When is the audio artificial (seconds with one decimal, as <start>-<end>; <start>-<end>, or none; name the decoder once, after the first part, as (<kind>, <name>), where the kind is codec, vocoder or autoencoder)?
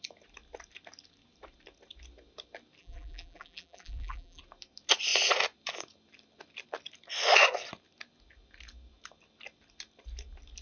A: 2.8-4.4 (vocoder, BigVGAN v2)